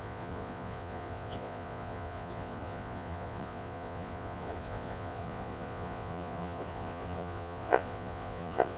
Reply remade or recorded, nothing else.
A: remade